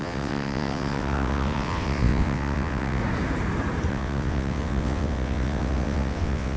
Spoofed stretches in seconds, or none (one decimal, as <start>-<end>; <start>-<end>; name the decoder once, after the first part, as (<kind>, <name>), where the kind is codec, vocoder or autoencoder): 0.0-3.0 (vocoder, WaveNeXt); 3.9-6.6